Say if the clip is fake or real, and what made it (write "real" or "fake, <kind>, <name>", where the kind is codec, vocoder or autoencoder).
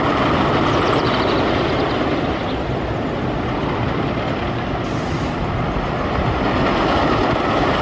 real